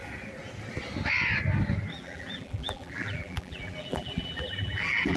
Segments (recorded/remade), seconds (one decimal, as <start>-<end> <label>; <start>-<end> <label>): 0.0-1.9 recorded; 1.9-5.2 remade